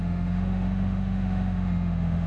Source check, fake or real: fake